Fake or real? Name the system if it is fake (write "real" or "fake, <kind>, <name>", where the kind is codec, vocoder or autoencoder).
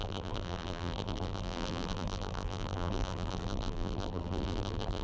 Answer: fake, vocoder, BigVGAN v2